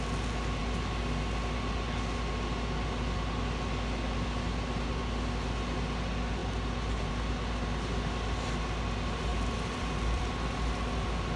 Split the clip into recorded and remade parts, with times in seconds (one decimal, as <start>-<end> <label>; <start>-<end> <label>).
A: 0.0-6.4 recorded; 6.4-7.1 remade; 7.1-9.3 recorded; 9.3-10.3 remade; 10.3-11.4 recorded

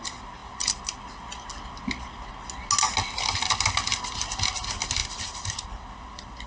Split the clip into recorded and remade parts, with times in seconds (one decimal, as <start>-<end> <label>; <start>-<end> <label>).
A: 0.0-5.0 recorded; 5.0-6.5 remade

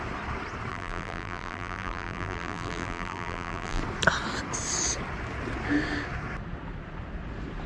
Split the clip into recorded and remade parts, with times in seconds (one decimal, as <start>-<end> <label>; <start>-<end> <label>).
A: 0.0-0.7 recorded; 0.7-3.8 remade; 3.8-7.7 recorded